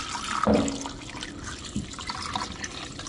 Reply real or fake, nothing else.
real